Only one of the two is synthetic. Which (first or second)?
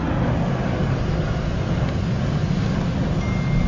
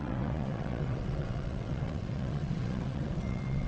second